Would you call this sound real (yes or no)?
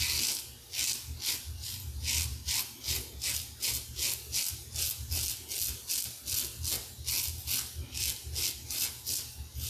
yes